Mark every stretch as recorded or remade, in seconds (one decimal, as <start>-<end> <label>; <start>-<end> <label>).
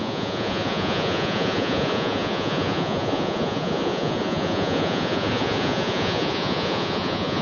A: 0.0-7.4 remade